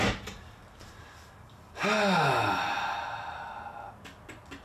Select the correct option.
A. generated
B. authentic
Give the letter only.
B